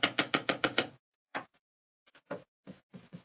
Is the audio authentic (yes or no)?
no